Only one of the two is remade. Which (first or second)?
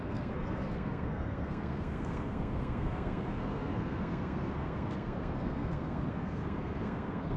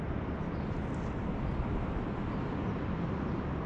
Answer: first